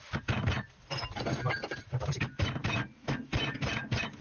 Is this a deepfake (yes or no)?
yes